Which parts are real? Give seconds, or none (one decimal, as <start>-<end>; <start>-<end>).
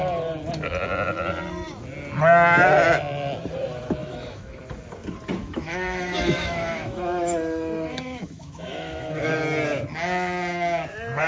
0.0-4.0; 4.6-5.4; 9.4-11.3